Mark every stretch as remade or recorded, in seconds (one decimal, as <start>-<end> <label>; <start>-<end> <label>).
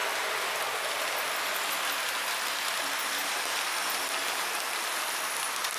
0.0-3.2 recorded; 3.2-4.6 remade; 4.6-5.8 recorded